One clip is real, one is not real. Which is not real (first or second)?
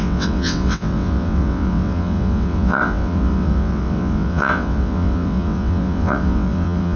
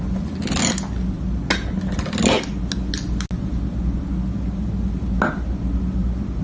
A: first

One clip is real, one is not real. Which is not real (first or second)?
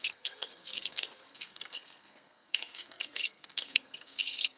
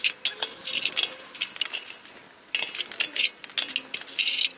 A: first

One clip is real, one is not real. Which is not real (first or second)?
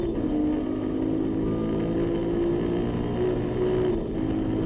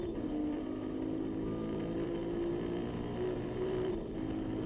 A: second